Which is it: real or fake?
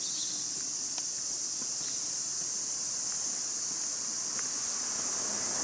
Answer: real